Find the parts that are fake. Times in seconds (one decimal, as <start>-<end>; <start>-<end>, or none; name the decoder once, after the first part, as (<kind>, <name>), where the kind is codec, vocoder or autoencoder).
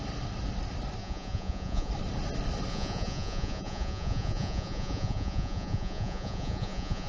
1.0-1.9 (vocoder, Vocos); 2.7-7.1